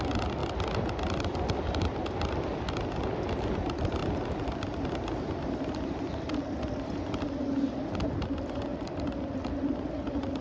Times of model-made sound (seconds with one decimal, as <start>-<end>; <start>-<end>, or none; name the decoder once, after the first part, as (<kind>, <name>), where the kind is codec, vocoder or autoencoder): none